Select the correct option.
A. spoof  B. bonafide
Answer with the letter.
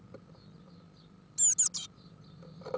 B